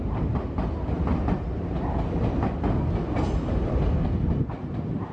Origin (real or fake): real